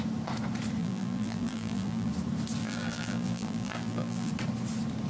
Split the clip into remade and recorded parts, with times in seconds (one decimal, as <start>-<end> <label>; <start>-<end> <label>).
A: 0.0-0.8 recorded; 0.8-2.1 remade; 2.1-2.6 recorded; 2.6-4.3 remade; 4.3-5.1 recorded